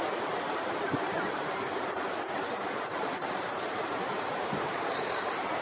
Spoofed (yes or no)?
yes